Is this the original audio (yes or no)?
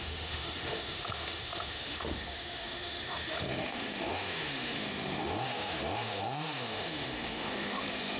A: no